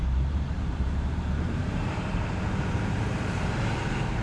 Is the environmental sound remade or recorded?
remade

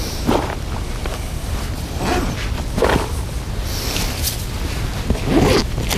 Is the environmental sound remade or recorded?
recorded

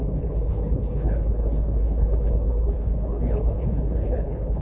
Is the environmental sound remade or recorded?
remade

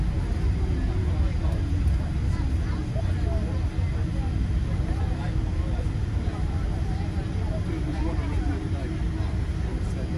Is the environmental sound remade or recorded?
recorded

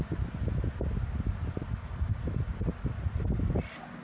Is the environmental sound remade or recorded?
recorded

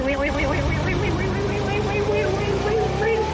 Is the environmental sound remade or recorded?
recorded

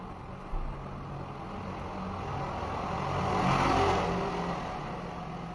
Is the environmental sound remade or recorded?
recorded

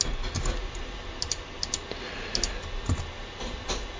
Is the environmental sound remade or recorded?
recorded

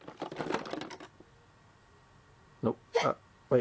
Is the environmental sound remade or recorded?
recorded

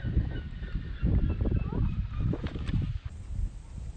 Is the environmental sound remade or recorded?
recorded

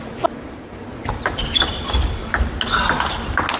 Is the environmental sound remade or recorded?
recorded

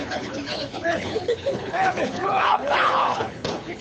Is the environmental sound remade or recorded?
remade